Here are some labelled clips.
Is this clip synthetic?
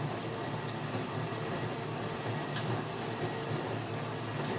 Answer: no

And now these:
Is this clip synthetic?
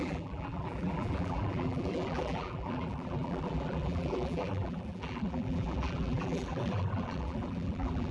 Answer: yes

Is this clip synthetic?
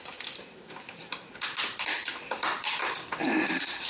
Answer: yes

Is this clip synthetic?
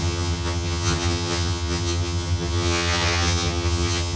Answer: yes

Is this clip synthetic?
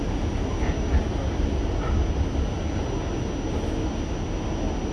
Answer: no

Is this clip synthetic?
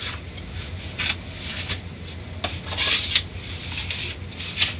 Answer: no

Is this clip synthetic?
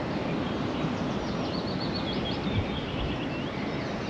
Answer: no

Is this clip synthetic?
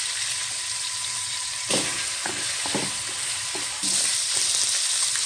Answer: no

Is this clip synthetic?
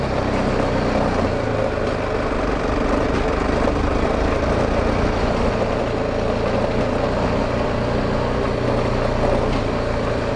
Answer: no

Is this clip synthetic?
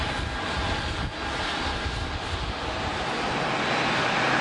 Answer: no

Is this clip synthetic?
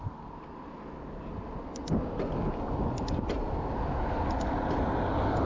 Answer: no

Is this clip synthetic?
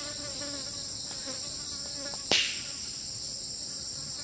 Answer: no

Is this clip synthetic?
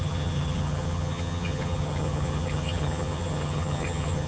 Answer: yes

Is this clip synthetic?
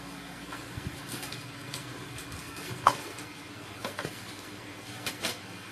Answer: yes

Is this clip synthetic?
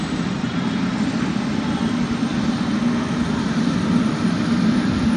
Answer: yes